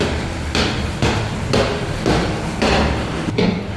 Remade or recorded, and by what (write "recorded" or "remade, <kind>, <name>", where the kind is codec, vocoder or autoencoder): recorded